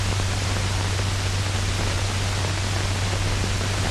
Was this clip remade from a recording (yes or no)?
no